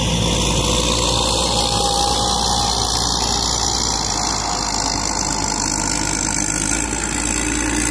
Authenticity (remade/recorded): recorded